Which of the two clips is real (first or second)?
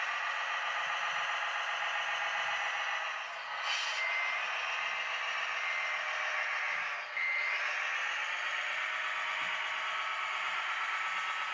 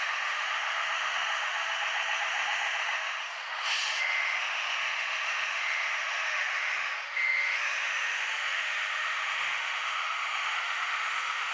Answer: first